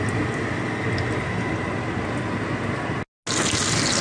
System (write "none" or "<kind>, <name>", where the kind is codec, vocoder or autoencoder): none